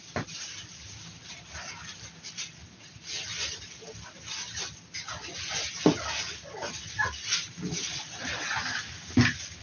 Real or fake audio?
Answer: real